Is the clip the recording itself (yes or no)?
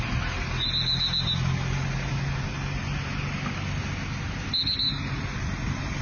yes